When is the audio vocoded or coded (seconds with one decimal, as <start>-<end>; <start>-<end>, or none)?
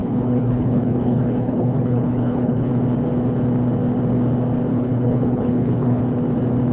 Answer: 0.0-2.7; 4.7-6.0